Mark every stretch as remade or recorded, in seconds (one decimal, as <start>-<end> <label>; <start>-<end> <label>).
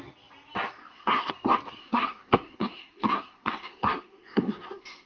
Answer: 0.0-0.8 recorded; 0.8-1.3 remade; 1.3-1.8 recorded; 1.8-5.1 remade